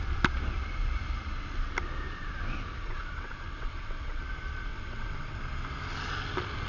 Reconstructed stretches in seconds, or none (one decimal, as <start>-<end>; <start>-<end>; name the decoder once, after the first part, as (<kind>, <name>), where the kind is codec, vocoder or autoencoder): 2.8-4.2 (vocoder, WaveNeXt); 4.7-5.4